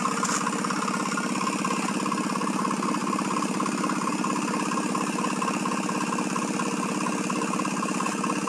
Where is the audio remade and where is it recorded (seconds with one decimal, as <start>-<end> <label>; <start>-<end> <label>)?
0.0-8.5 recorded